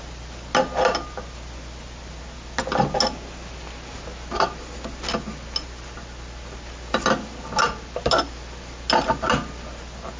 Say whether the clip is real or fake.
real